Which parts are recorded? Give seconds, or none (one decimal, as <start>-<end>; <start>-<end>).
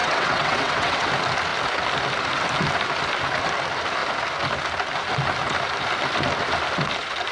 1.1-7.3